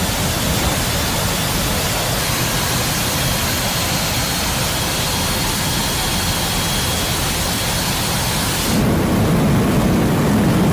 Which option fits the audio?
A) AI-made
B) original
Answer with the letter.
B